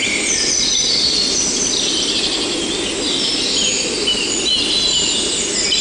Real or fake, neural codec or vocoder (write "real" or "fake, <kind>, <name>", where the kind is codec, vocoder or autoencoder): real